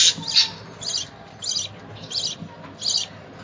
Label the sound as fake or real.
real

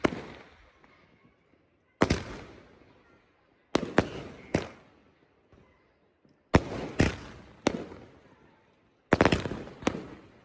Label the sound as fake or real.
real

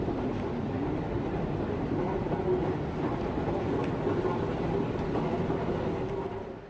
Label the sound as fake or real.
real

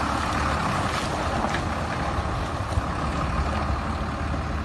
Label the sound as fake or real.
real